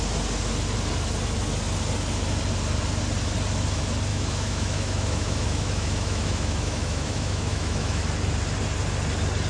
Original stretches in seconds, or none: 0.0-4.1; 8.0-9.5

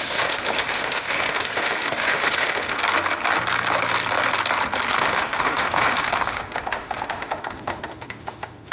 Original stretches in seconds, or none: 2.8-4.9

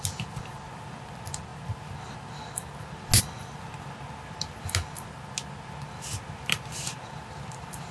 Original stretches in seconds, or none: 0.0-7.9

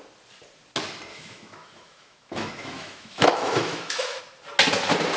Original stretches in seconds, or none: 0.0-1.1; 4.2-5.2

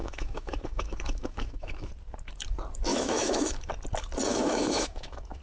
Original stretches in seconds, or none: 1.9-2.9; 3.7-4.3

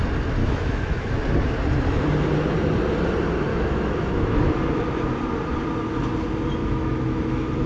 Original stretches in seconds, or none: 0.0-0.4; 1.2-3.5; 4.5-6.6

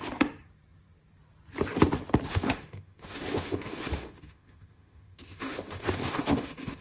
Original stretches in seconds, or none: 0.0-2.3

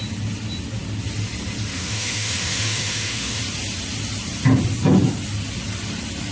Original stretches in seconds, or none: 0.0-1.7; 3.4-6.3